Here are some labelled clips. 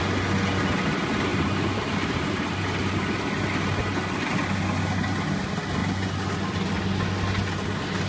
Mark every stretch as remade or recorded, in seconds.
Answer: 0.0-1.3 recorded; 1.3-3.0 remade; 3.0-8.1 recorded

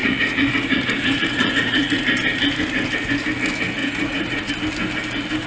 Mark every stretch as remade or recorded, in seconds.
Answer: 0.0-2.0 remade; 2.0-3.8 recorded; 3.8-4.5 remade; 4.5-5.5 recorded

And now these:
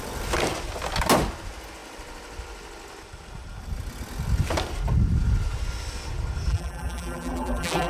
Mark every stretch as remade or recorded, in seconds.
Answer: 0.0-6.5 recorded; 6.5-7.9 remade